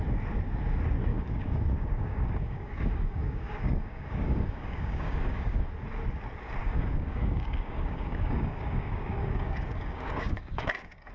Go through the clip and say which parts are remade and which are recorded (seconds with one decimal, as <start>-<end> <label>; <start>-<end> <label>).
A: 0.0-1.1 recorded; 1.1-5.6 remade; 5.6-6.6 recorded; 6.6-11.1 remade